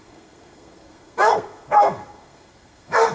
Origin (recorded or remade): remade